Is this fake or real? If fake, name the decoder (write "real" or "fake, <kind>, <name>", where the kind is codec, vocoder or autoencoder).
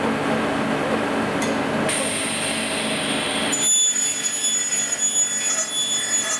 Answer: real